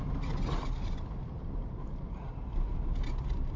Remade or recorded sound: recorded